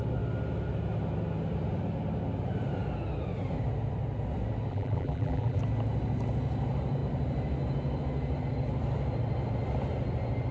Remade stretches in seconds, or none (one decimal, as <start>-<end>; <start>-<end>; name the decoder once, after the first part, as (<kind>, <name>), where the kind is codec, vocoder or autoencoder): 4.7-5.6 (vocoder, BigVGAN v2)